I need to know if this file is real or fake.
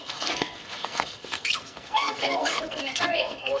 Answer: fake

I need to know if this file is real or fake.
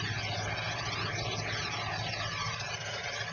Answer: real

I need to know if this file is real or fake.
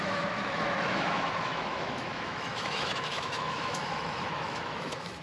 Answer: fake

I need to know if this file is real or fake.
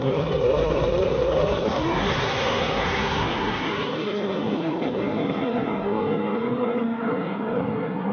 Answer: fake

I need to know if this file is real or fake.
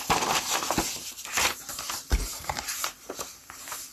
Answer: fake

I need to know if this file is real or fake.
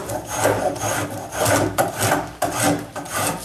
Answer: real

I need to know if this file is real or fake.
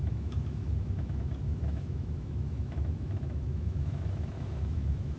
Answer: fake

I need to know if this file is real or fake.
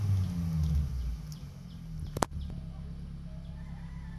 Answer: real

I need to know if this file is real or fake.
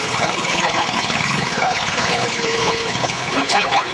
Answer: fake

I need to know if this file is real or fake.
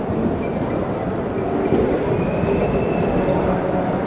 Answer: real